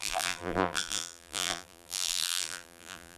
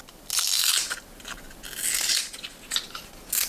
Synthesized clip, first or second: first